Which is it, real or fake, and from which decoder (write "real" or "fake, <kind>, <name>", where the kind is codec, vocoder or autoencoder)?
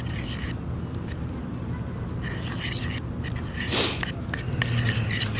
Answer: real